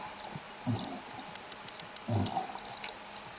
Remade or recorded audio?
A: recorded